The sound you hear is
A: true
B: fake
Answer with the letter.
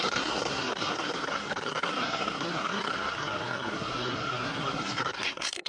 B